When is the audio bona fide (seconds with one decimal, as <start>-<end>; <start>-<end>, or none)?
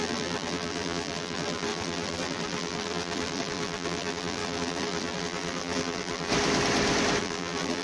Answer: 6.3-7.2